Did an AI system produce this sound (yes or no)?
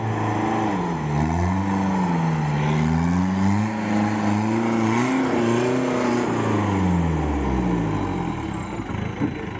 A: no